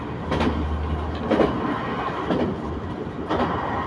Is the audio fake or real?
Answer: real